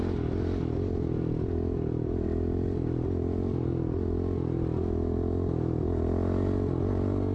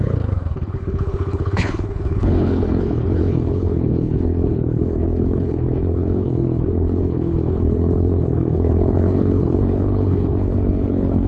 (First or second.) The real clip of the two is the first